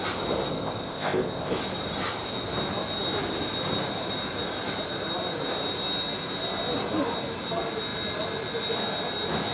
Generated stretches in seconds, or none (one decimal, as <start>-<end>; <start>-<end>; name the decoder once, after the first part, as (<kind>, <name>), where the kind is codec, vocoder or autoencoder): 0.5-1.6 (codec, ZipCodec)